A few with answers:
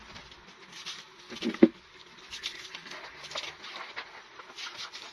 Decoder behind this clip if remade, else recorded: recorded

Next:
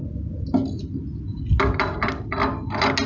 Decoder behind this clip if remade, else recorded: recorded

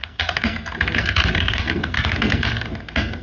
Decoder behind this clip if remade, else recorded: remade, codec, SNAC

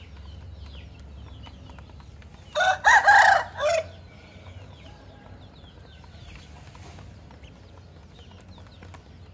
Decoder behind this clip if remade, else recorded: recorded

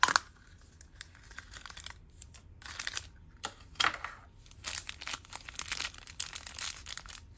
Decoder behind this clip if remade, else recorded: recorded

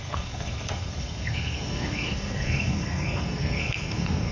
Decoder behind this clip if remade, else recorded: remade, codec, SNAC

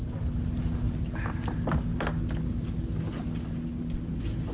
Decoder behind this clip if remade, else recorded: recorded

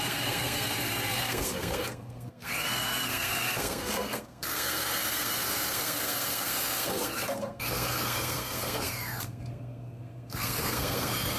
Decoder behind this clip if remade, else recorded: remade, codec, SNAC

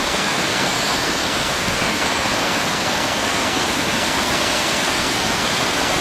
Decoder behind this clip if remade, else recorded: remade, codec, SNAC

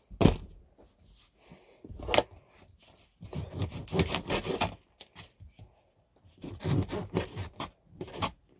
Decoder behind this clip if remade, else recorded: recorded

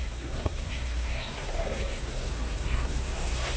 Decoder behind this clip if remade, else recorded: remade, codec, SNAC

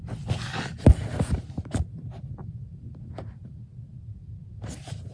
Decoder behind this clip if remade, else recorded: recorded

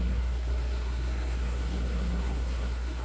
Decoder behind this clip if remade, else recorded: remade, codec, SNAC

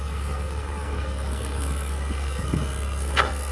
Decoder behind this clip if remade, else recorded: remade, codec, SNAC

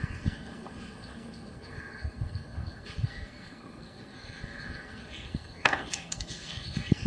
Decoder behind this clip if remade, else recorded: remade, codec, SNAC